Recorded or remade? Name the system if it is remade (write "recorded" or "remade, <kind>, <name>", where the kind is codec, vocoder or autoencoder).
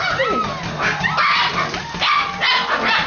recorded